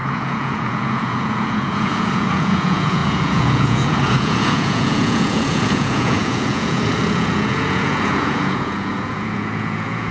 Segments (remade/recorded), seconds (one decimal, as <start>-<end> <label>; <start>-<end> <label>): 0.0-10.1 remade